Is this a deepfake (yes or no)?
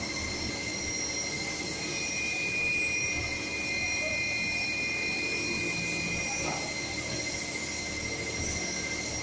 no